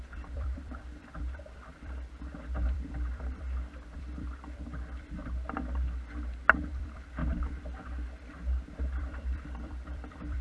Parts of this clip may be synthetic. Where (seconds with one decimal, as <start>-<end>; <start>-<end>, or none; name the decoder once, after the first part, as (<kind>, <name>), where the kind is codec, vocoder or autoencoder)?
0.0-5.2 (vocoder, BigVGAN v2); 6.7-7.2; 8.8-10.4